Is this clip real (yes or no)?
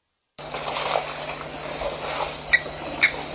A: yes